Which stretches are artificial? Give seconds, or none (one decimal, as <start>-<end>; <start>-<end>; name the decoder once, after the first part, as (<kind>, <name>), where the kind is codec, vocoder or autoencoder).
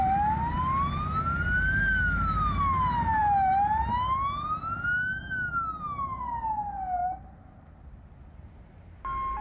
none